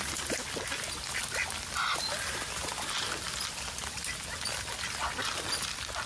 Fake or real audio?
real